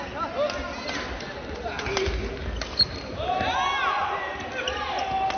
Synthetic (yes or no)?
no